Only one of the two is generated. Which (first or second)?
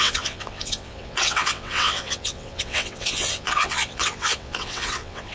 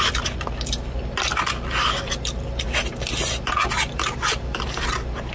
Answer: first